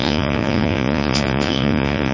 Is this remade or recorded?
remade